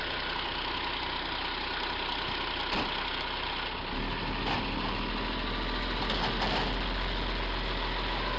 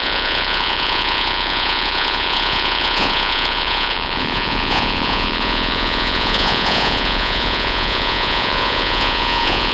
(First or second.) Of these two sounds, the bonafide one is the first